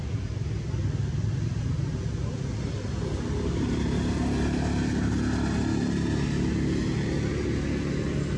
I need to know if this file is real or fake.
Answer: real